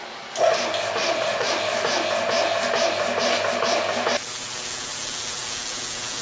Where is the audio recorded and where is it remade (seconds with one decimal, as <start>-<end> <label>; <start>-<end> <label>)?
0.0-1.0 recorded; 1.0-1.5 remade; 1.5-6.2 recorded